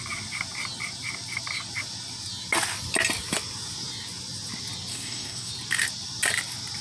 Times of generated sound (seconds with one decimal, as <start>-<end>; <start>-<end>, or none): 4.9-5.5